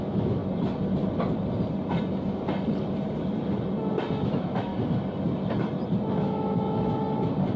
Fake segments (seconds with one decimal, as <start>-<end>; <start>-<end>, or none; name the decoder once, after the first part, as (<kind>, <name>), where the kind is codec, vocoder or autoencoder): 0.0-0.4 (autoencoder, DAC-VAE); 4.2-4.7; 6.1-7.0